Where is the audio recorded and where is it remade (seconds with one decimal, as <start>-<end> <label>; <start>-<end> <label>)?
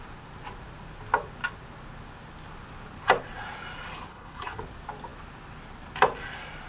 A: 0.0-4.1 recorded; 4.1-4.6 remade; 4.6-6.7 recorded